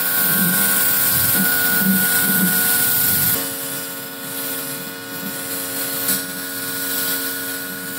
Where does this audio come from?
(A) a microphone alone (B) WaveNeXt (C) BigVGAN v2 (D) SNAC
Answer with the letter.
A